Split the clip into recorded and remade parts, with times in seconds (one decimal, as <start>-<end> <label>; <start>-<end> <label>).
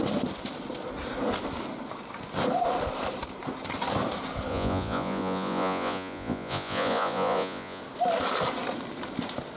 0.0-4.5 recorded; 4.5-7.8 remade; 7.8-9.6 recorded